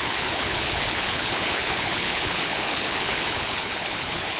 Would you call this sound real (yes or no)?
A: no